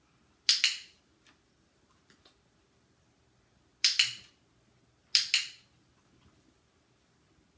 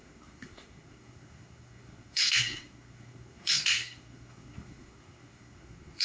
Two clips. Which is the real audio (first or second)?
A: first